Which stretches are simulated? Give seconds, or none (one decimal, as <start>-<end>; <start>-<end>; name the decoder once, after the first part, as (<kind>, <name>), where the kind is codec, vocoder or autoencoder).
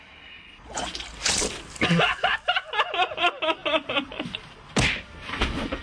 none